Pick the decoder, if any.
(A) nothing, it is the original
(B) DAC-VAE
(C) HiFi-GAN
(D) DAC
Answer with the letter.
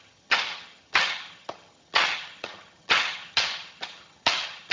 C